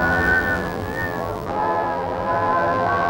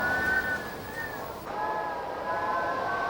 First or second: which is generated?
first